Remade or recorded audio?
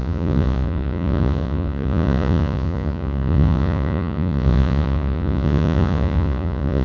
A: remade